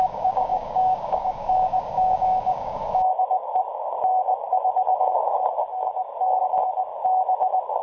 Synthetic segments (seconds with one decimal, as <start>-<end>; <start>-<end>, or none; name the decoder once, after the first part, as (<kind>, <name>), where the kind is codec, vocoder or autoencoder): 0.0-6.9 (codec, DAC)